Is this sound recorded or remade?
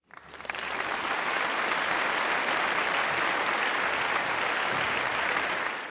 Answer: recorded